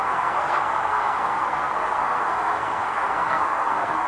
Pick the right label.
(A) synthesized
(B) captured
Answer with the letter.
A